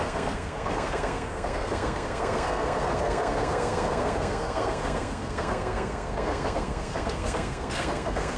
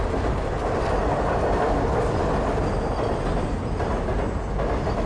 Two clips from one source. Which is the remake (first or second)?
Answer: first